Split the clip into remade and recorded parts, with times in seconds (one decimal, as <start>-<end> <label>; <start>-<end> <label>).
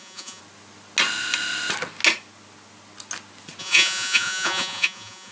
0.0-0.4 remade; 0.4-3.6 recorded; 3.6-5.3 remade